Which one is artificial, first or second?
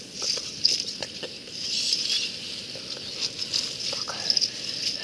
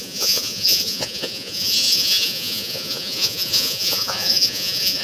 second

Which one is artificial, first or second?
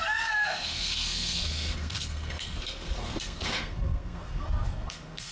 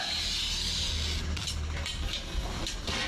first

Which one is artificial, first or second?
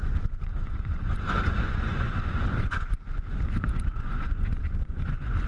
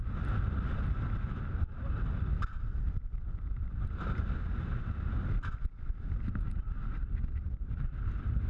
first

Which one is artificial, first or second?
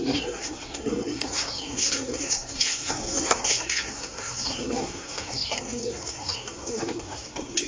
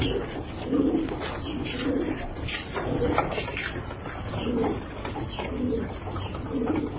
first